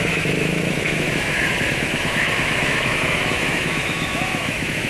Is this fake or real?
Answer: fake